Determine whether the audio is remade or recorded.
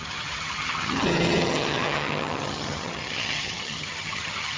remade